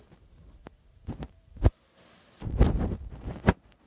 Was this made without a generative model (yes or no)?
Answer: no